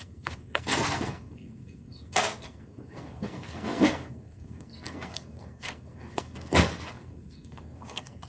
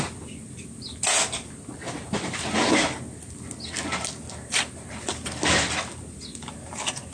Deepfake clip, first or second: first